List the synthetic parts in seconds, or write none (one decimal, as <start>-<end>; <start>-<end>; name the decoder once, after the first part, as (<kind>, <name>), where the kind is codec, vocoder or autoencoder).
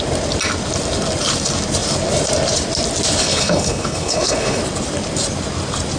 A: 3.2-4.6 (codec, HILCodec)